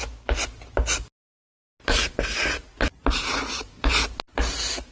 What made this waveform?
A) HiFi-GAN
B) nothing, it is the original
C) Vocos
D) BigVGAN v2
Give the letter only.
B